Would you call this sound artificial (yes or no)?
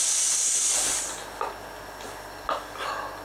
no